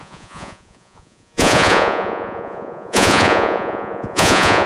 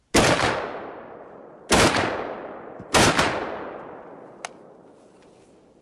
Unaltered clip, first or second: second